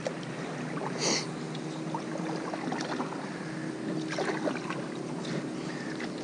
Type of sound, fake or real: real